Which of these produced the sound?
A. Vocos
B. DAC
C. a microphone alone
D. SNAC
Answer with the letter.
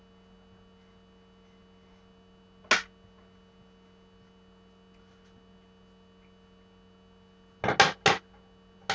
C